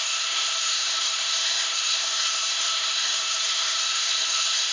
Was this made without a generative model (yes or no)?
no